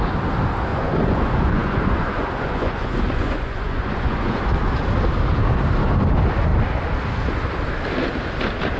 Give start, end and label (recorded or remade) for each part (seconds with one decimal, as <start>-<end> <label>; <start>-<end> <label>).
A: 0.0-0.7 recorded; 0.7-4.4 remade; 4.4-8.8 recorded